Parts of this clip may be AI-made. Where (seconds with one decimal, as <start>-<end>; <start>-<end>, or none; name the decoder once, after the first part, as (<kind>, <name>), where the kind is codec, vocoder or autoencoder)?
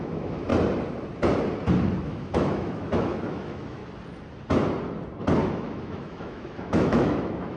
0.0-0.5 (autoencoder, DAC-VAE); 2.0-3.8; 5.5-7.6